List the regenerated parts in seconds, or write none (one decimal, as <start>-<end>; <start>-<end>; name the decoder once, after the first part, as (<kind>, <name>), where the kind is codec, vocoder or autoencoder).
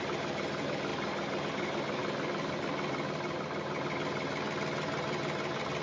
none